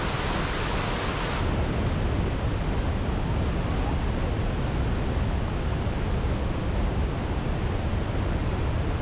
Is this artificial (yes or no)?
no